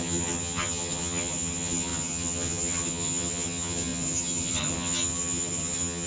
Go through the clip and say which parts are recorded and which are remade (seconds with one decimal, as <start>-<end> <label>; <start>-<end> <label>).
0.0-6.1 remade